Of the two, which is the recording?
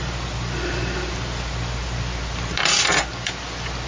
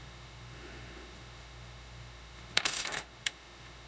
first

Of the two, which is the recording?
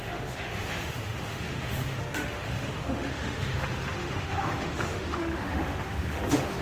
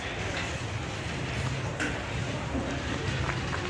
second